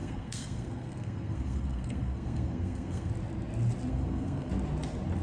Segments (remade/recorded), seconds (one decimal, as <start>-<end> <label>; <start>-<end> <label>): 0.0-3.1 remade; 3.1-3.9 recorded; 3.9-4.5 remade; 4.5-5.2 recorded